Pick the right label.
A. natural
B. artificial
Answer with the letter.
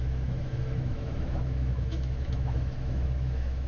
B